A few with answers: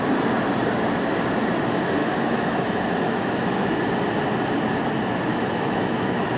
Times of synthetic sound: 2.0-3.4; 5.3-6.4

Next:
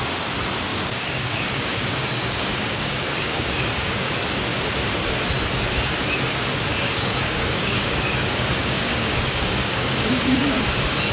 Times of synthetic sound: 0.7-4.1; 6.7-10.6

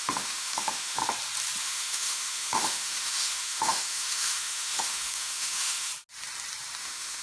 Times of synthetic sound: 0.0-1.0; 1.6-5.9; 6.8-7.2

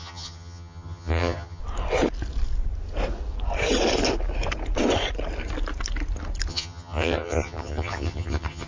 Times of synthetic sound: 0.0-1.6; 6.5-8.7

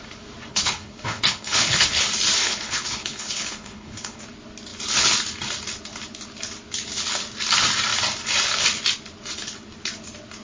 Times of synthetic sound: 0.5-2.0; 2.4-4.2